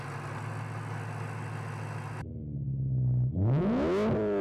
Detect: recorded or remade recorded